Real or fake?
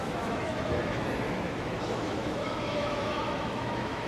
fake